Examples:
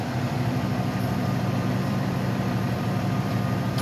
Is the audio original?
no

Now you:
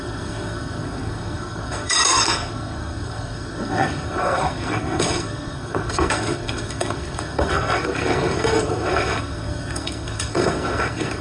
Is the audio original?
no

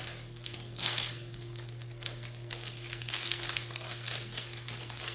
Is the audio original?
no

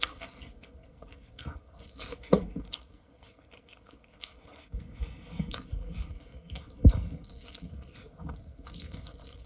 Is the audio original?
no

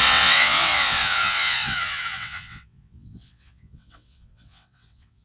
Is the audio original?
no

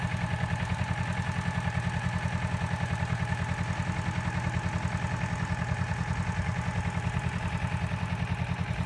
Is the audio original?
yes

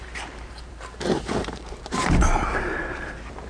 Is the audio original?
no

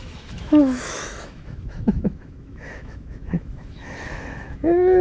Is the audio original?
no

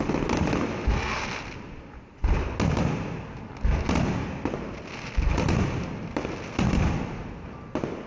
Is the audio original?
yes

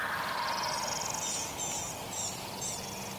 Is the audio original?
yes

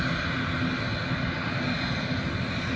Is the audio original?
yes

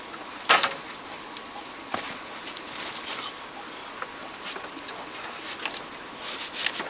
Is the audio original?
yes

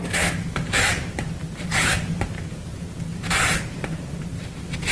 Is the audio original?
no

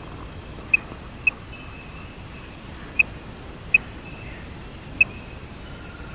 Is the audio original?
yes